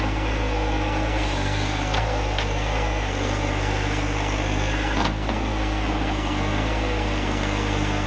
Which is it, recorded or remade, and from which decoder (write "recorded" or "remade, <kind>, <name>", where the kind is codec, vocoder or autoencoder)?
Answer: remade, codec, SNAC